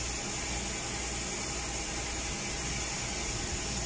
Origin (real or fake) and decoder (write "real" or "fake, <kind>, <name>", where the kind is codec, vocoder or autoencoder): real